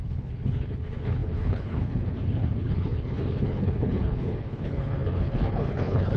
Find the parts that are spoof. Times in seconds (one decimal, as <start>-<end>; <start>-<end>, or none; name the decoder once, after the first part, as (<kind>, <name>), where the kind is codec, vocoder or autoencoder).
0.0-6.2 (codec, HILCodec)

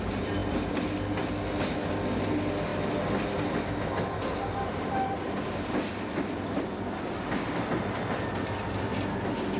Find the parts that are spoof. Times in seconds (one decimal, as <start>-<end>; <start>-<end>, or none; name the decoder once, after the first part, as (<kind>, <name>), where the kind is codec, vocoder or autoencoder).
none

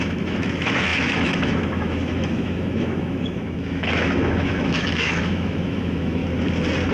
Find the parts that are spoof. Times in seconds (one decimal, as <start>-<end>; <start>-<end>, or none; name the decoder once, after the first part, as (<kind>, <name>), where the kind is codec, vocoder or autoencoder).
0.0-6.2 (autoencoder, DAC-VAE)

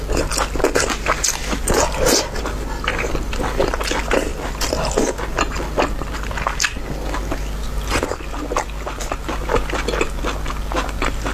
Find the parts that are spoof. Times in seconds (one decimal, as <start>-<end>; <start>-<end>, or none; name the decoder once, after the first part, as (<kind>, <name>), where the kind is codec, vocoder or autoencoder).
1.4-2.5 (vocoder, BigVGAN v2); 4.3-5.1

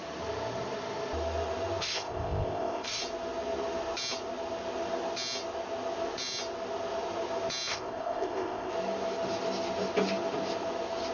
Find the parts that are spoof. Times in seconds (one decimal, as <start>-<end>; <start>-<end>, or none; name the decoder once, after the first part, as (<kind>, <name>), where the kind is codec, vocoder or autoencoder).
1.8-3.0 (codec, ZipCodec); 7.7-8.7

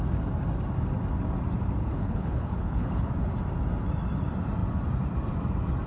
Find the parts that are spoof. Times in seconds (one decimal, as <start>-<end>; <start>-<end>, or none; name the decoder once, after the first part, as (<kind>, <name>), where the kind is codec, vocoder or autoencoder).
1.8-3.1 (codec, HILCodec)